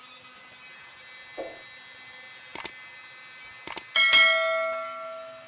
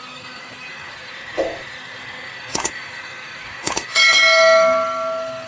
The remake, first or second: second